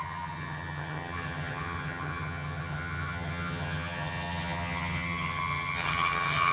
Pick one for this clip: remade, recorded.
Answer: remade